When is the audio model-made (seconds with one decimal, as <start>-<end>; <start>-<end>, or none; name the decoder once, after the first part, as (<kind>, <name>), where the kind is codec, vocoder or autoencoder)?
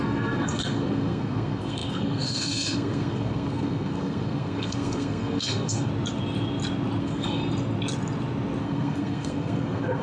0.0-5.9 (codec, SNAC); 7.0-7.4; 8.6-10.0